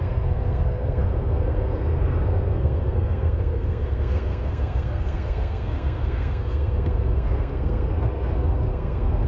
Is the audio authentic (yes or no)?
no